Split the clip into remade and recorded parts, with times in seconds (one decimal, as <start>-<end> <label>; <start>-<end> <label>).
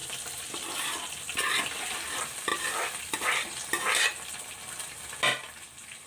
0.0-1.2 remade; 1.2-2.5 recorded; 2.5-3.8 remade; 3.8-6.1 recorded